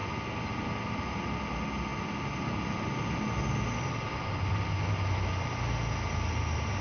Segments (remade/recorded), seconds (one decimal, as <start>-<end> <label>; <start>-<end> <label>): 0.0-6.8 recorded